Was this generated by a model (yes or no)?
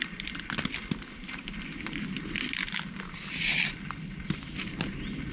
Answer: no